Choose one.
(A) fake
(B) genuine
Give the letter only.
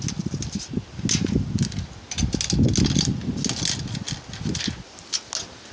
B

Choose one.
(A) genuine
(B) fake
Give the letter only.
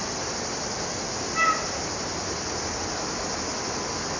A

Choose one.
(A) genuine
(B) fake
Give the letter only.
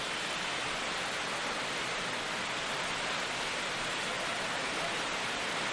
A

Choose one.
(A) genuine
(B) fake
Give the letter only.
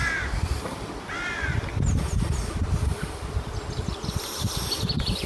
A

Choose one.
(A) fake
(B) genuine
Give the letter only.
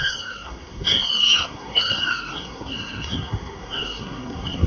A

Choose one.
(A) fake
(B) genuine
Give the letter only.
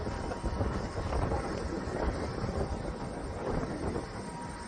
B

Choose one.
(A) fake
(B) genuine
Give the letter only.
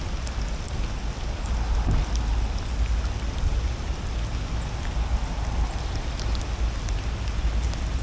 B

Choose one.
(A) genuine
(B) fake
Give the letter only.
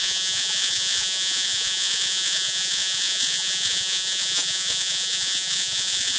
B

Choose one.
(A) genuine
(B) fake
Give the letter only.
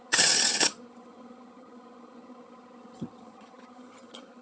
B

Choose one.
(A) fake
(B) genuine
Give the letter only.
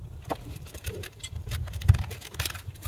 A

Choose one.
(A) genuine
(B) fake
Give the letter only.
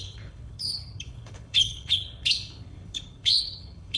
B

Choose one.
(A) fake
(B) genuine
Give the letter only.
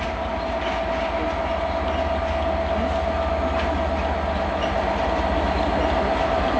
B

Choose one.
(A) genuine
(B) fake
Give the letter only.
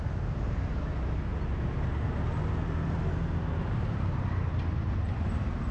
A